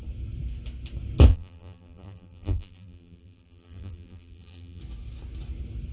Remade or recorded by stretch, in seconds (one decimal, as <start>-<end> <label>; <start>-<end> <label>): 0.0-1.3 recorded; 1.3-4.8 remade; 4.8-5.9 recorded